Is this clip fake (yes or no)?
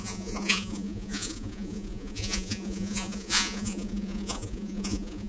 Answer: yes